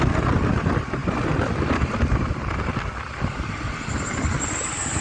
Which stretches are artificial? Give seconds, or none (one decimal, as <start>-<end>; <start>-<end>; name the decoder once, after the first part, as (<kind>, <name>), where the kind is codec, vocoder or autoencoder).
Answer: none